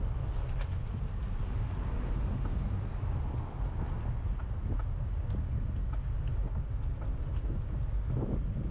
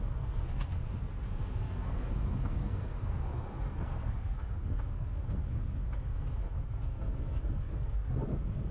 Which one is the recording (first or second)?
first